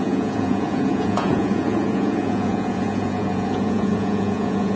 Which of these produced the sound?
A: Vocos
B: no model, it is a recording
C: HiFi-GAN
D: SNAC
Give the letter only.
A